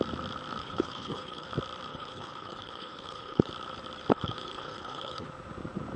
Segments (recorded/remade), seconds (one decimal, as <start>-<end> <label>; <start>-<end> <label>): 0.0-0.6 recorded; 0.6-1.5 remade; 1.5-1.9 recorded; 1.9-3.5 remade; 3.5-4.1 recorded; 4.1-5.3 remade; 5.3-6.0 recorded